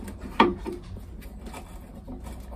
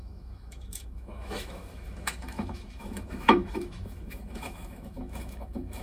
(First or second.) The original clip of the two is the first